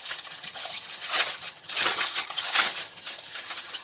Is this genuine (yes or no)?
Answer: no